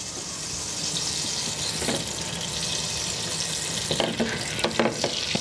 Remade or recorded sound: recorded